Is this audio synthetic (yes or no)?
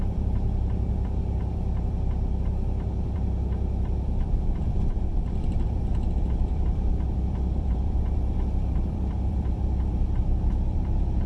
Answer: yes